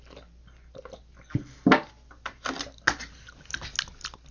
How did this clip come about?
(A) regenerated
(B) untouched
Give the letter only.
B